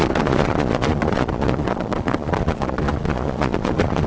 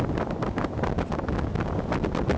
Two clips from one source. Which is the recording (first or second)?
second